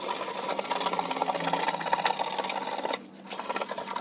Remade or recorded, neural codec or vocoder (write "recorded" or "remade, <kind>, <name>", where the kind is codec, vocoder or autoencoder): recorded